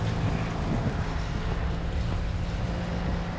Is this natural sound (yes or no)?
yes